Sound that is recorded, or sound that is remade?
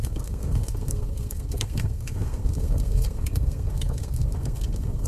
remade